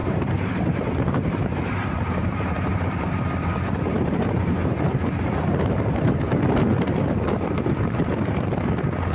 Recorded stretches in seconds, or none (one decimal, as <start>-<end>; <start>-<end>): none